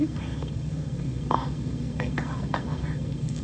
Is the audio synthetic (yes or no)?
yes